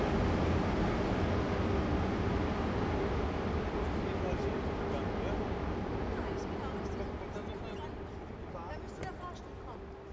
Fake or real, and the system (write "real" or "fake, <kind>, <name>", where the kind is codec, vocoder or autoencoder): real